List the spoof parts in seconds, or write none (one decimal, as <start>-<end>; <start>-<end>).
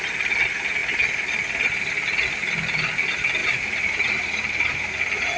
3.4-5.0